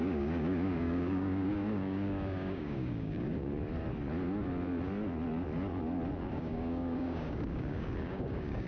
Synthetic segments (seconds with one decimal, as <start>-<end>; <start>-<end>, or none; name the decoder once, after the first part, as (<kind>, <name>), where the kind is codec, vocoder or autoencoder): 0.0-3.5 (codec, DAC); 6.3-8.7